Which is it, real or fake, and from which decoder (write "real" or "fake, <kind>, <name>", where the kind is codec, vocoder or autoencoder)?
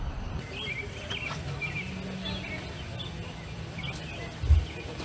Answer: real